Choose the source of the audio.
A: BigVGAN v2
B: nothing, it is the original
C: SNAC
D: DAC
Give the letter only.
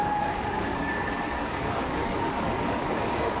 D